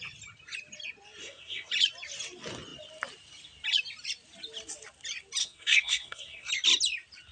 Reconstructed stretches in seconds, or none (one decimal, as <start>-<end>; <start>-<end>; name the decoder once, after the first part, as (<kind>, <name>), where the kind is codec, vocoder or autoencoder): 1.2-1.7 (codec, SNAC); 5.4-6.5